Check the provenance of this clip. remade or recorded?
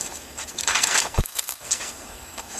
remade